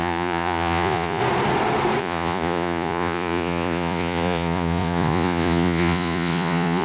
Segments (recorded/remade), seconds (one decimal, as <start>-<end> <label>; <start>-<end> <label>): 0.0-1.2 remade; 1.2-2.0 recorded; 2.0-6.8 remade